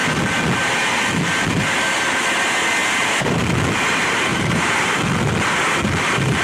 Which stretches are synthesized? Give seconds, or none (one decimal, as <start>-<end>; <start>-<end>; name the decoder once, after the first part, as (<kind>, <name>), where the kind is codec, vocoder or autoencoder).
2.8-3.4 (vocoder, BigVGAN v2); 4.3-4.9